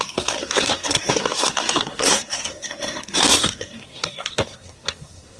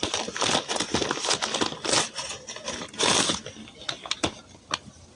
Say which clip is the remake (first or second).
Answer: first